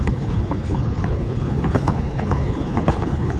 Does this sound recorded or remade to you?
remade